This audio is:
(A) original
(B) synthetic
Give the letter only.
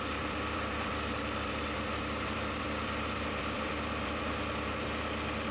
B